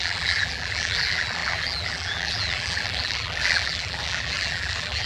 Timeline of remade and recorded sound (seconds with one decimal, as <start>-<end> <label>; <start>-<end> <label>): 0.0-5.1 remade